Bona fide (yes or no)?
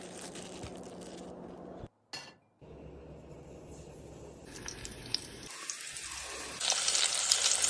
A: yes